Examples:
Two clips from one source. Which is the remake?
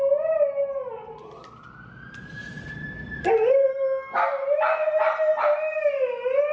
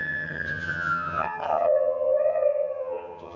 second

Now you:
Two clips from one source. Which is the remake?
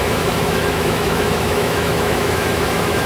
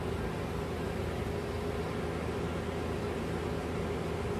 first